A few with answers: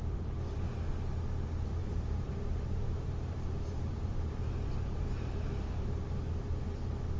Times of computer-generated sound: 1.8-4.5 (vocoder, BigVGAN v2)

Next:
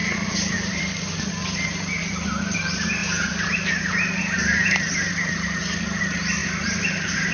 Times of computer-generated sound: 0.0-0.7 (vocoder, BigVGAN v2); 6.4-7.3